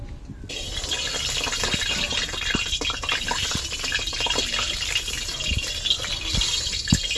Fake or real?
real